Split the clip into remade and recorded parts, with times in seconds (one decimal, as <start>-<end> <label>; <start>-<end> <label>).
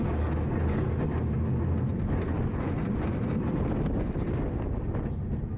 0.0-1.9 recorded; 1.9-3.5 remade; 3.5-5.6 recorded